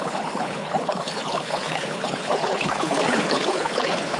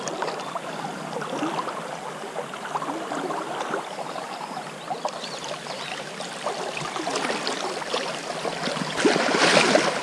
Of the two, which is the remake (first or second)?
first